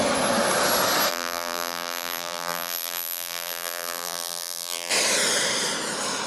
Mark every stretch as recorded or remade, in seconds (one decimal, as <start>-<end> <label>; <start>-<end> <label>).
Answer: 0.0-1.1 recorded; 1.1-4.9 remade; 4.9-6.3 recorded